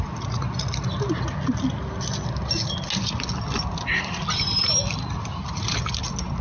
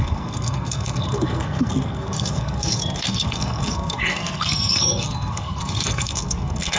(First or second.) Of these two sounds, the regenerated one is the second